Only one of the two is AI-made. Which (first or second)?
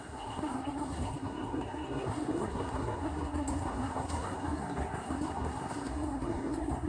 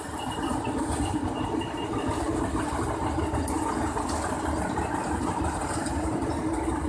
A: first